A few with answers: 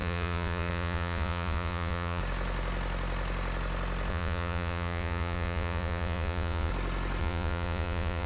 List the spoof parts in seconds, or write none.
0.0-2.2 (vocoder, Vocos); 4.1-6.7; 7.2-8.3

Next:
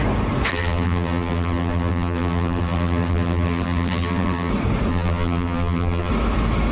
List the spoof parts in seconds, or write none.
0.5-4.5 (vocoder, BigVGAN v2); 4.9-6.1

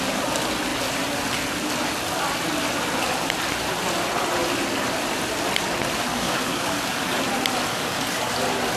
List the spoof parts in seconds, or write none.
6.1-7.2 (codec, DAC); 7.7-8.3

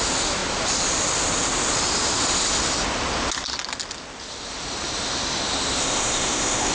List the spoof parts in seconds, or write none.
5.8-6.7 (codec, ZipCodec)